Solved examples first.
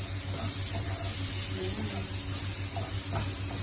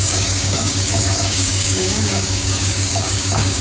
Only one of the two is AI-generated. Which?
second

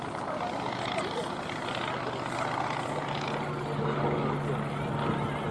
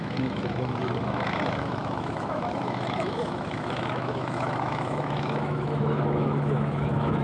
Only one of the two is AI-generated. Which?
second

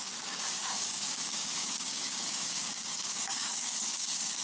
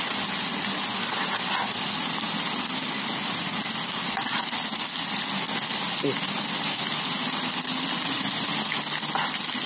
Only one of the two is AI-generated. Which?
first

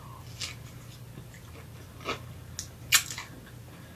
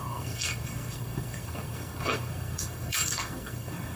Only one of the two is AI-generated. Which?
second